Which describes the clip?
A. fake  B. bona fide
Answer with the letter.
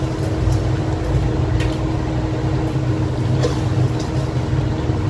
B